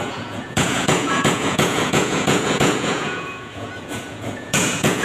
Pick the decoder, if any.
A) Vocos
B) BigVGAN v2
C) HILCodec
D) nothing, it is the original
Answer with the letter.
A